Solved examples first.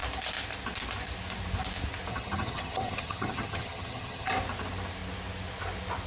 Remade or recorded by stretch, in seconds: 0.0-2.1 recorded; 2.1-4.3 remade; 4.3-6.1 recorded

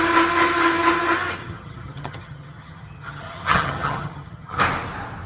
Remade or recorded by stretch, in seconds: 0.0-1.4 recorded; 1.4-4.6 remade; 4.6-5.3 recorded